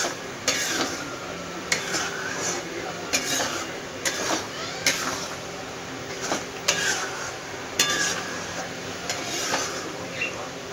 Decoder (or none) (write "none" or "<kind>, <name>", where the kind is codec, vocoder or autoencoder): vocoder, BigVGAN v2